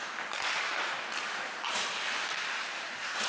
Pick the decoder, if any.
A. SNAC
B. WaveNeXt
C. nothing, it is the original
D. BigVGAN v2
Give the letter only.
C